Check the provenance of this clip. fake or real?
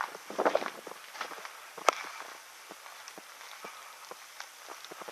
real